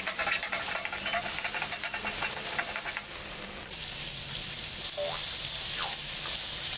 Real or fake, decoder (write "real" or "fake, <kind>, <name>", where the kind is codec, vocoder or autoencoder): real